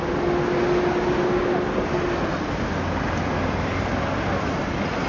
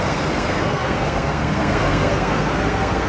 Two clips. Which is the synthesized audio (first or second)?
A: second